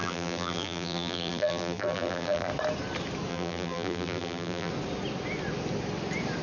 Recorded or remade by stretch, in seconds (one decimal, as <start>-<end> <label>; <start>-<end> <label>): 0.0-2.5 remade; 2.5-3.3 recorded; 3.3-4.7 remade; 4.7-6.4 recorded

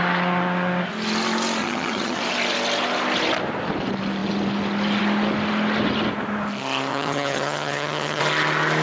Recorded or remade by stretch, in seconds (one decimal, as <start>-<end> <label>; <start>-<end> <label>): 0.0-1.6 recorded; 1.6-2.2 remade; 2.2-6.9 recorded; 6.9-8.2 remade; 8.2-8.8 recorded

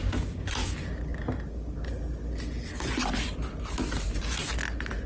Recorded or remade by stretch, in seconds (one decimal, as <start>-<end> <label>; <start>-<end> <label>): 0.0-5.1 recorded

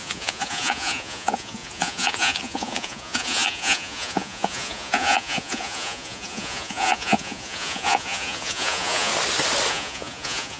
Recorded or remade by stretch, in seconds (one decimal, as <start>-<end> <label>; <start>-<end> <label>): 0.0-9.1 remade; 9.1-9.7 recorded; 9.7-10.6 remade